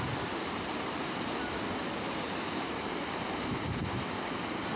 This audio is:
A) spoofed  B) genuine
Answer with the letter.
B